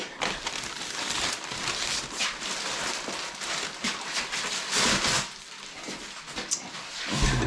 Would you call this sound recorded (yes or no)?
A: yes